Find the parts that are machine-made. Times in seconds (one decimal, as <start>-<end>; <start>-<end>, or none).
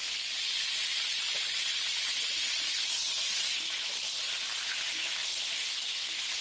none